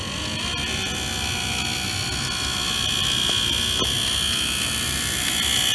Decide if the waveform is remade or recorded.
recorded